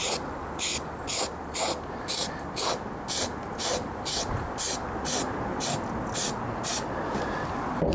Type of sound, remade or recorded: recorded